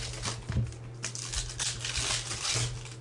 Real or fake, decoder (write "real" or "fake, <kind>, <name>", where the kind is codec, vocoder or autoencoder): real